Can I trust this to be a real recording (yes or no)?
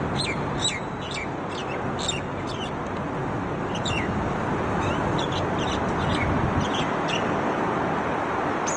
yes